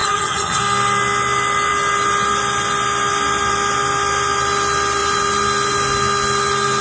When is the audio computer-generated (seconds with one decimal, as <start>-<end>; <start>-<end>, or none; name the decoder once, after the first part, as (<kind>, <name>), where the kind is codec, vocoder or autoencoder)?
0.0-0.6 (vocoder, HiFi-GAN)